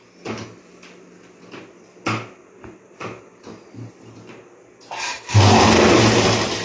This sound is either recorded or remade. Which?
recorded